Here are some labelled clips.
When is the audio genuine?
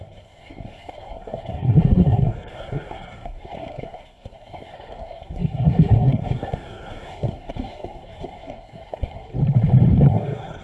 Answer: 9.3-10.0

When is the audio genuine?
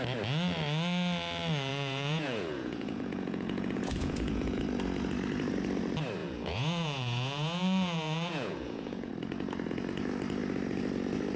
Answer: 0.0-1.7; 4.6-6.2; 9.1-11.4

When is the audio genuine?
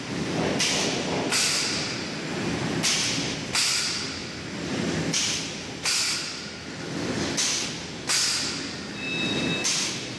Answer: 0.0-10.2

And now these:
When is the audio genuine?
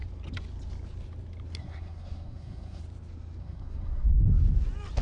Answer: 0.0-1.6; 2.8-3.4; 4.1-5.0